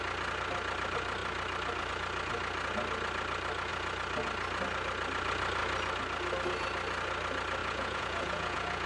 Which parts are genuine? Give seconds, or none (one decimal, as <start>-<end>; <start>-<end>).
0.0-7.6